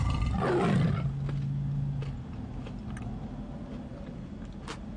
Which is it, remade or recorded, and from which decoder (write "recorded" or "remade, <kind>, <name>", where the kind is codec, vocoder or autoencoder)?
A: recorded